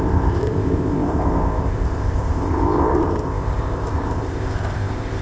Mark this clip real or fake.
fake